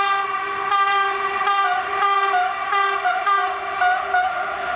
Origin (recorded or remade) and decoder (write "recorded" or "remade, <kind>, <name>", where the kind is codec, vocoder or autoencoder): recorded